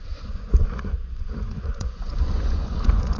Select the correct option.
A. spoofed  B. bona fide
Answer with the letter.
A